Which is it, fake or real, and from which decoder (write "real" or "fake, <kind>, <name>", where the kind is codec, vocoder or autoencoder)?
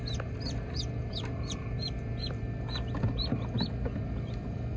fake, vocoder, BigVGAN v2